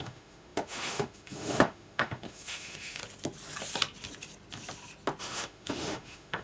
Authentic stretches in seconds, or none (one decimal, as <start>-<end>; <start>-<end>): 3.0-5.2